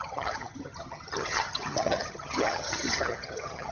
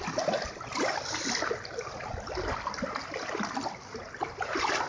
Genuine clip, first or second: second